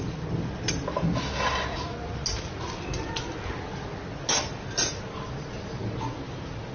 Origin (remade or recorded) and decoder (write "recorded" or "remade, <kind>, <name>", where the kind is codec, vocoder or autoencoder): recorded